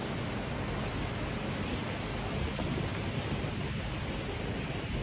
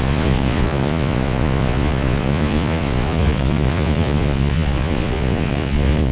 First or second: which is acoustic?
first